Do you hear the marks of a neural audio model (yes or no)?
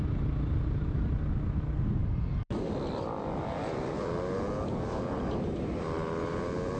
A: no